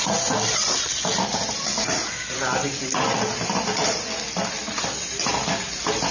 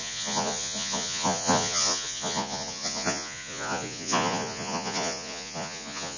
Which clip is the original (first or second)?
first